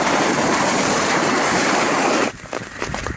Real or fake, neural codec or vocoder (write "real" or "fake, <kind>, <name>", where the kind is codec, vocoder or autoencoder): fake, vocoder, BigVGAN v2